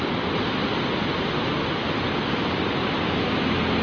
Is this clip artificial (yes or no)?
no